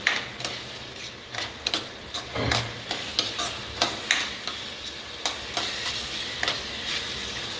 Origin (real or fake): real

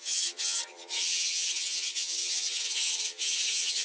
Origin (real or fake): fake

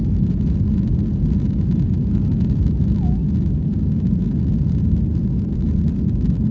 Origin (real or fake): real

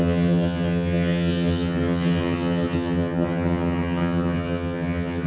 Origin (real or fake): fake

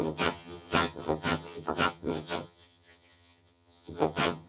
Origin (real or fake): fake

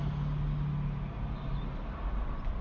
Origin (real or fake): real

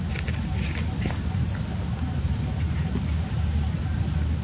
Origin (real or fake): real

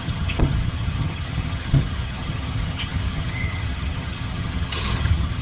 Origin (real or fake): fake